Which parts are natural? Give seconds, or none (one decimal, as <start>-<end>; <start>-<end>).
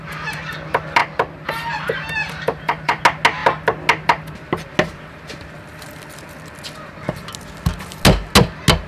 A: 0.0-1.0; 1.5-2.2; 3.0-8.9